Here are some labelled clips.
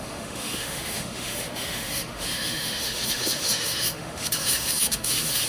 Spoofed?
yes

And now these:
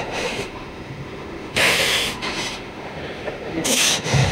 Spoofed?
yes